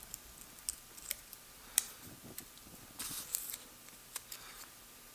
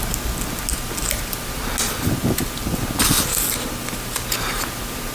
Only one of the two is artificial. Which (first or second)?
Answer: first